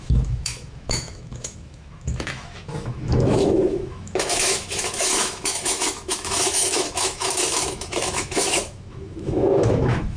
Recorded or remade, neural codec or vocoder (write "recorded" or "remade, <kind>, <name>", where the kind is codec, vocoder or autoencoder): remade, autoencoder, DAC-VAE